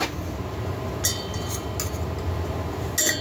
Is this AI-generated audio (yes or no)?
no